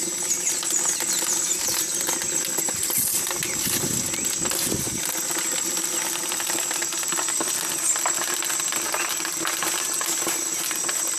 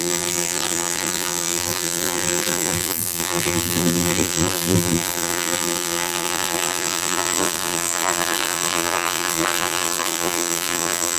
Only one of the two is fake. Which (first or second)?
second